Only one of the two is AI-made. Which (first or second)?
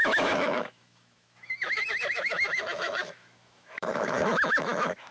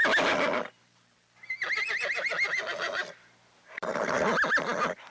first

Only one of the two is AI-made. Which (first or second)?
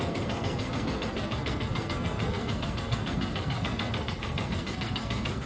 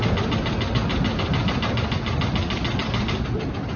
first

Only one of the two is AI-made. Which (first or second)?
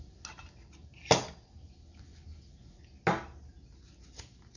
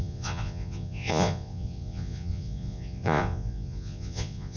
second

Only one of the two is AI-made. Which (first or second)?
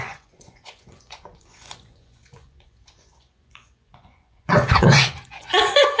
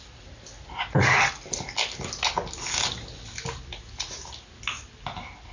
first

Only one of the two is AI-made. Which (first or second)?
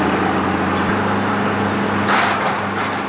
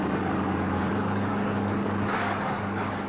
second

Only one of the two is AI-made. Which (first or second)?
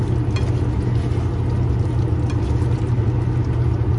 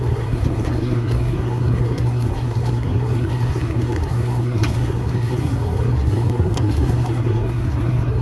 second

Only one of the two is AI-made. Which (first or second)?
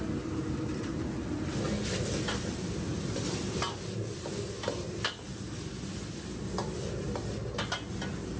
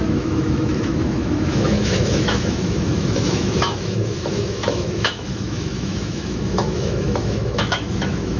second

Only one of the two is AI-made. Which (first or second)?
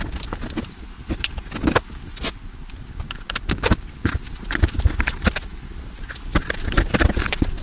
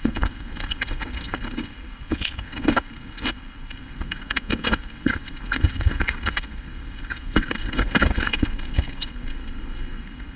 second